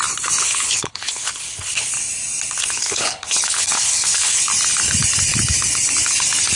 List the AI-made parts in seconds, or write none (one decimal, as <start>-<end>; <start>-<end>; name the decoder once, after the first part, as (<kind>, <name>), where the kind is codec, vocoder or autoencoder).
0.4-1.9 (codec, HILCodec); 2.6-4.4